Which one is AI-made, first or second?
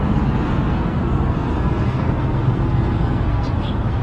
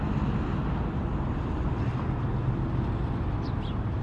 first